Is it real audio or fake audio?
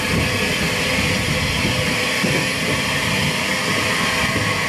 real